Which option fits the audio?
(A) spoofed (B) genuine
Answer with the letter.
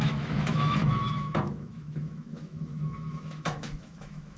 A